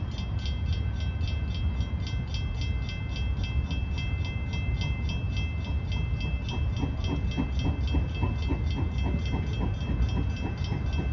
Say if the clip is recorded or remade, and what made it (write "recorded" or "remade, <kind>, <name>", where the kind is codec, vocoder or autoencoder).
recorded